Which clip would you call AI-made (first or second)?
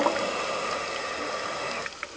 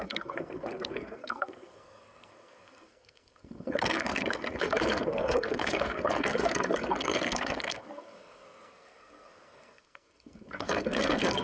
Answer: second